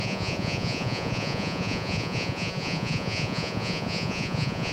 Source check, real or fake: fake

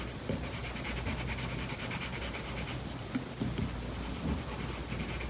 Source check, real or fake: real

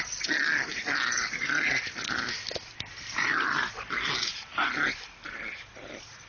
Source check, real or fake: real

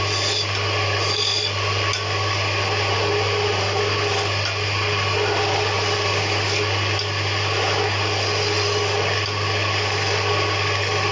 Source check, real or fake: real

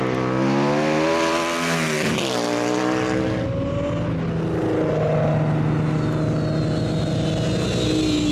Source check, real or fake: real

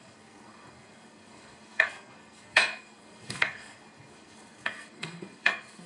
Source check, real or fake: fake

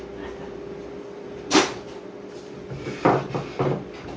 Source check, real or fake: real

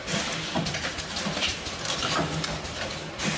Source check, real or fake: real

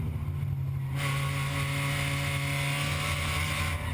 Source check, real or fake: real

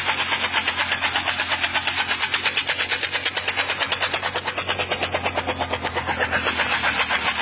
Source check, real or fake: real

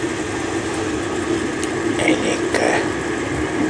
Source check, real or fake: real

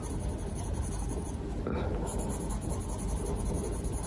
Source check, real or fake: real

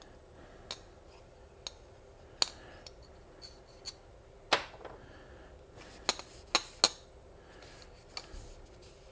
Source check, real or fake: real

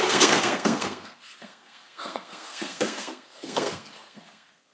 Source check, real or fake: fake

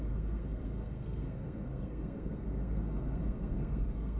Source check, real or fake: fake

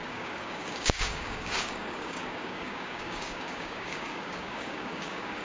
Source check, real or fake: fake